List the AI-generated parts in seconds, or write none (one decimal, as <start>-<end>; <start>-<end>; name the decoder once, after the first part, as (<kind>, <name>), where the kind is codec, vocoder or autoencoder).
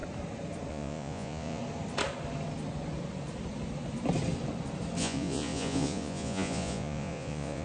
0.7-1.6 (vocoder, Vocos); 5.0-7.6